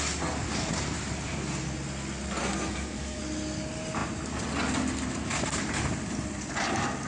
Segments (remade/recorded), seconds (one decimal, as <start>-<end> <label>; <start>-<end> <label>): 0.0-2.4 recorded; 2.4-3.2 remade; 3.2-7.1 recorded